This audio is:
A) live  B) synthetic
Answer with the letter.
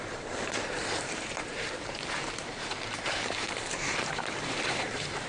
B